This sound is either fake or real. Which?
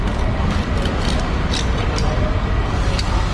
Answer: real